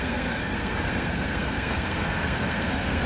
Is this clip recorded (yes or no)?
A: no